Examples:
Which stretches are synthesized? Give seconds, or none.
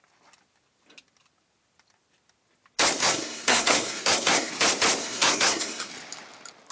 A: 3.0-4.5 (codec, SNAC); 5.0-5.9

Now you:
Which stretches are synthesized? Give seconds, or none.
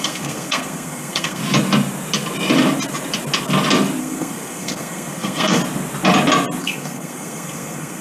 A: 0.0-1.4 (codec, SNAC); 4.0-5.6; 6.6-8.0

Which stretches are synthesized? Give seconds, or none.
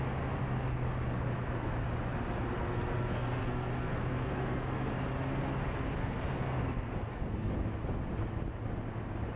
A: 2.6-4.9 (codec, SNAC); 6.0-7.5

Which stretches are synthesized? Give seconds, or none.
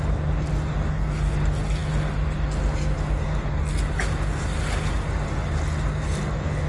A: none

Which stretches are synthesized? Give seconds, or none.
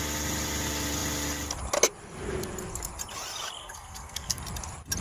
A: 3.6-4.4 (codec, SNAC)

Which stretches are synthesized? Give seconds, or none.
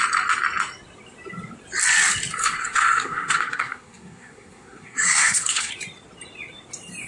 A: 2.4-5.7 (codec, SNAC)